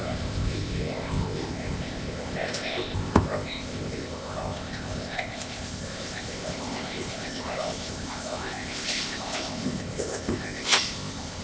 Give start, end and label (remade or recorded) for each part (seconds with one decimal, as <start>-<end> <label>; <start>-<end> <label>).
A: 0.0-11.4 remade